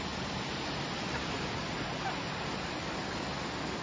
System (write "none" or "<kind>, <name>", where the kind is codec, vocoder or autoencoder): none